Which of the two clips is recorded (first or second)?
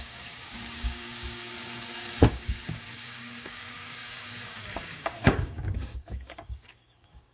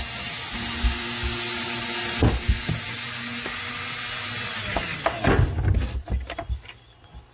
second